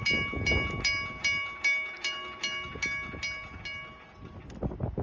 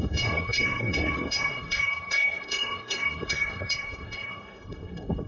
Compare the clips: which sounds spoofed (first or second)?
second